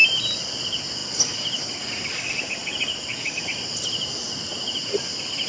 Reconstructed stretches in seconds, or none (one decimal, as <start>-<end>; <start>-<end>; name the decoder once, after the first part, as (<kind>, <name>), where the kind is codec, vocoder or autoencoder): none